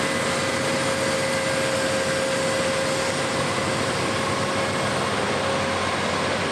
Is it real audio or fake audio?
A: real